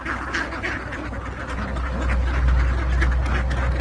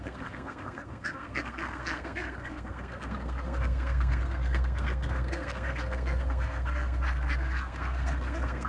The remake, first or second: second